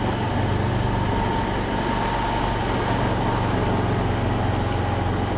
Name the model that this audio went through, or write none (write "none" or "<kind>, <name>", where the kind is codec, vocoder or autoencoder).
none